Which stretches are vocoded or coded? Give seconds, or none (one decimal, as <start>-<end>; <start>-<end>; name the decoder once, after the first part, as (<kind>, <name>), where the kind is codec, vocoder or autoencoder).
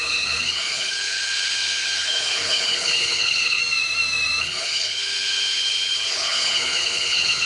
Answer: 0.0-3.6 (codec, HILCodec); 4.4-7.5